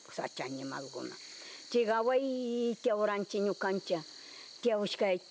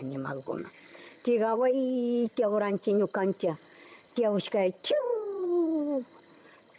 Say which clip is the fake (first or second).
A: second